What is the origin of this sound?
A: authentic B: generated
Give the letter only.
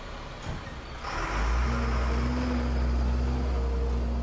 A